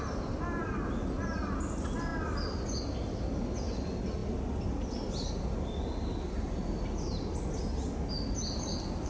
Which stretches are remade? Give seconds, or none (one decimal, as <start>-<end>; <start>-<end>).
none